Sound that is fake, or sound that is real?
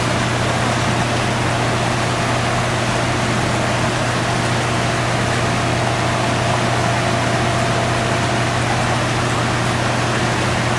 real